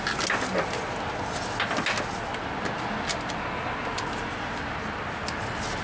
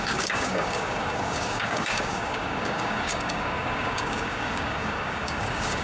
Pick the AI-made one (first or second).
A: second